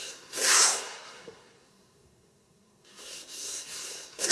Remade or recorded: remade